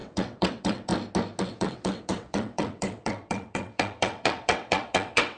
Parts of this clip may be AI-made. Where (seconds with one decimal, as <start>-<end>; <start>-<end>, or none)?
0.0-0.9; 1.4-5.4